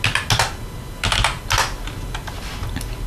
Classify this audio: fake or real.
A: real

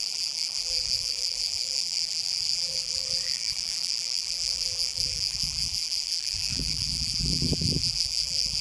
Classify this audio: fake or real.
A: fake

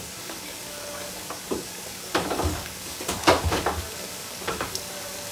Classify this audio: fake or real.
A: fake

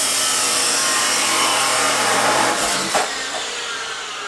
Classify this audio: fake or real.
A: fake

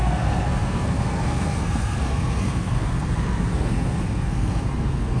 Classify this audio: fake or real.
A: fake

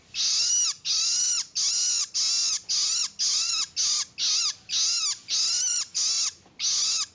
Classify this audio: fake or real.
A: real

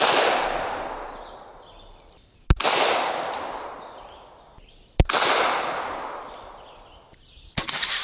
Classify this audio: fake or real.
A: real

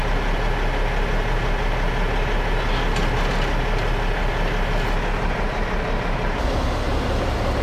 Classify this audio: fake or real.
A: real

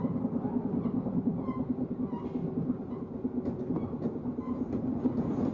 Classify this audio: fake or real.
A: real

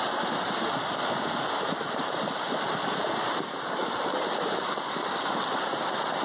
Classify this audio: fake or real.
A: real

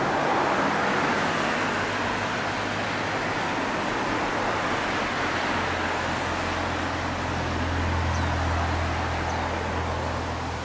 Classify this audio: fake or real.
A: real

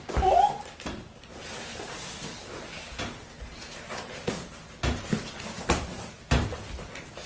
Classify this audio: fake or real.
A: real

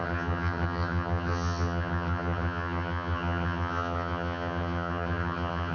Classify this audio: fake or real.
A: fake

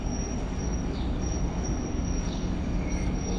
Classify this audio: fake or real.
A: fake